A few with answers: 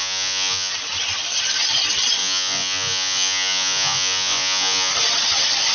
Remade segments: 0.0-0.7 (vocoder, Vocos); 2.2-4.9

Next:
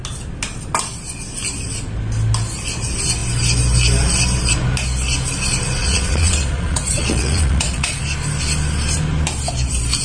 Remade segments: 5.8-8.0 (vocoder, Vocos)

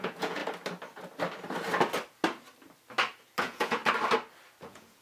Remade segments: 0.0-0.4 (vocoder, Vocos); 3.4-3.8; 4.6-5.0